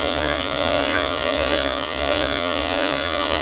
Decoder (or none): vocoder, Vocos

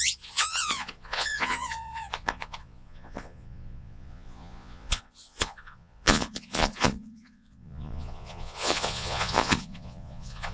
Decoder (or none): vocoder, Vocos